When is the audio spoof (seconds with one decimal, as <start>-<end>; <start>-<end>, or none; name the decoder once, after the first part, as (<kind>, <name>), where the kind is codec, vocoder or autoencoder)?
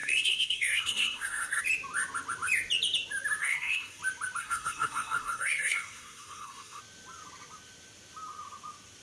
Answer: 0.0-1.6 (codec, SNAC); 3.4-4.0; 4.4-6.8